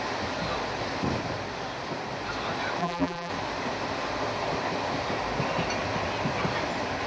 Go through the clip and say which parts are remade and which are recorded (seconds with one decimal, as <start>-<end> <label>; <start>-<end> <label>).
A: 0.0-2.8 recorded; 2.8-3.3 remade; 3.3-7.1 recorded